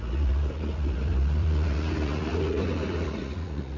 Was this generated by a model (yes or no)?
yes